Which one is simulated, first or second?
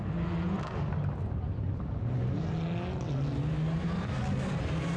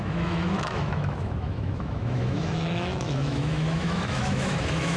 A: second